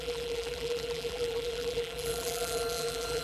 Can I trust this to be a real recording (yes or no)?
no